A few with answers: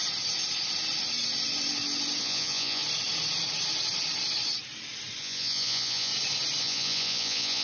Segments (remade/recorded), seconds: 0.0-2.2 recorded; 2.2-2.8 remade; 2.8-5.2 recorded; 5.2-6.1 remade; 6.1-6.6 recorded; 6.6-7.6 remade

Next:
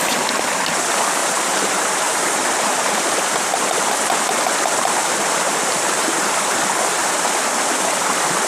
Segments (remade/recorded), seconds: 0.0-1.2 recorded; 1.2-3.5 remade; 3.5-5.0 recorded; 5.0-6.3 remade; 6.3-7.0 recorded; 7.0-7.5 remade; 7.5-8.5 recorded

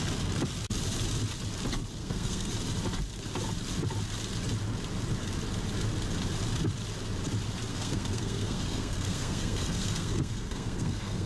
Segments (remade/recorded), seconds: 0.0-2.0 recorded; 2.0-2.5 remade; 2.5-7.7 recorded; 7.7-11.3 remade

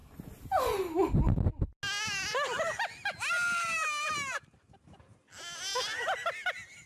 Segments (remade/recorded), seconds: 0.0-6.9 recorded

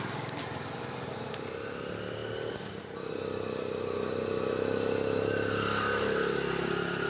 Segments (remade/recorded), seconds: 0.0-7.1 recorded